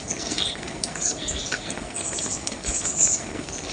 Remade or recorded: remade